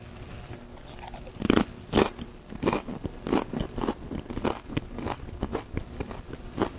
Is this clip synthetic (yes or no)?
no